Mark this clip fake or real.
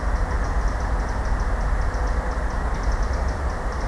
real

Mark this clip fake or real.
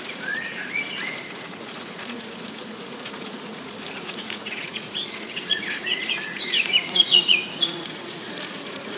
fake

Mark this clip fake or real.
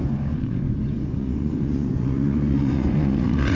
fake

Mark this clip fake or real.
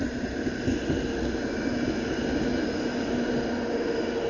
real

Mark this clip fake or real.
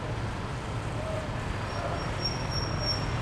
real